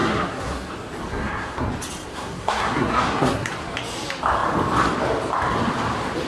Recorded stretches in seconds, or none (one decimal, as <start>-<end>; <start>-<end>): 0.7-1.1; 1.7-2.1; 3.5-6.3